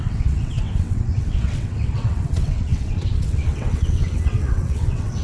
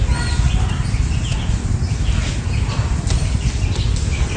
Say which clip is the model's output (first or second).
first